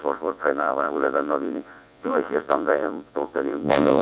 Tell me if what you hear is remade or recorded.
remade